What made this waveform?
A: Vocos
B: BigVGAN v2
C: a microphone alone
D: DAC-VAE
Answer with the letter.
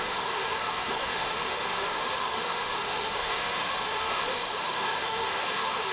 D